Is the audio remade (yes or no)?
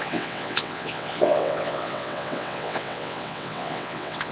yes